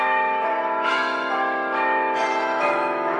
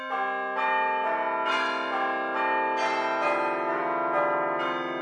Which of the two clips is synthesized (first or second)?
first